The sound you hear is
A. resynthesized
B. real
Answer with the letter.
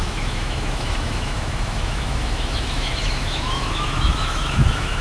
A